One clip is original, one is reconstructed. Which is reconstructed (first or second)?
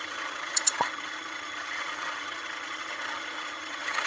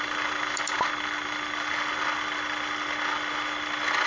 first